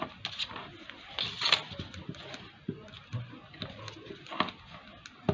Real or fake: real